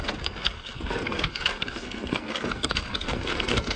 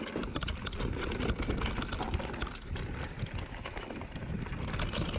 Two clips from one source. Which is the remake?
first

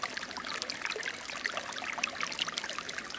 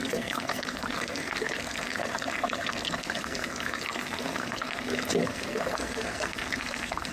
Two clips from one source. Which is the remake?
second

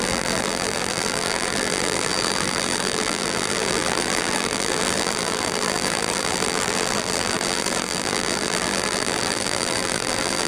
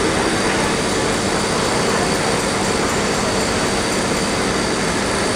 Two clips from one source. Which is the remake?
first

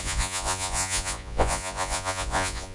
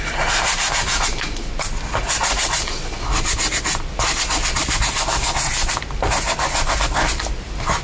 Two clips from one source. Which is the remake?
first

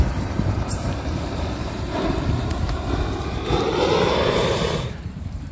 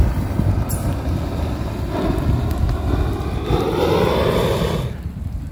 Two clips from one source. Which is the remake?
first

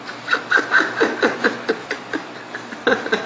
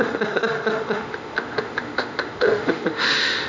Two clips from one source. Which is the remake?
second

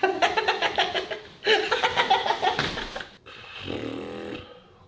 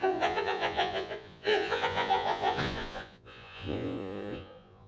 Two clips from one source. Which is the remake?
second